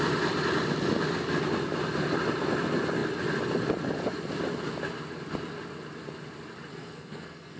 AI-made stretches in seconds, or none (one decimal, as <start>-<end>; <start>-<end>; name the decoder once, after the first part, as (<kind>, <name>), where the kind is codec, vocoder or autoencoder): 6.7-7.6 (codec, SNAC)